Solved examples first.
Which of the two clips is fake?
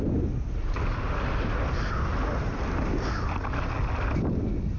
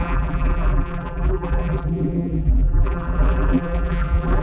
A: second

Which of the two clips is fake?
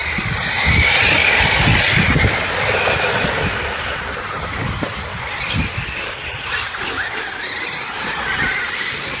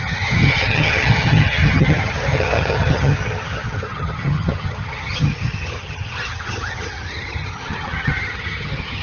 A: second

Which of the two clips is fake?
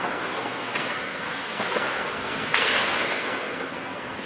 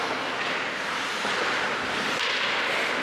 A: first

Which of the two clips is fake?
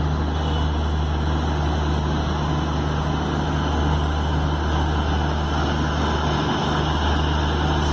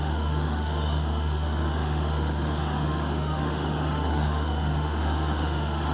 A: second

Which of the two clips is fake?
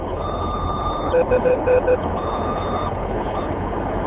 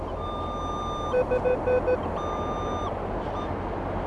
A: first